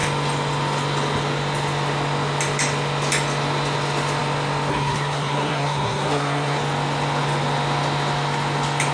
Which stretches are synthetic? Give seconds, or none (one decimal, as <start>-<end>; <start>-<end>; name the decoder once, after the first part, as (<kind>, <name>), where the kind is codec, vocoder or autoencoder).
4.7-6.6 (codec, SNAC)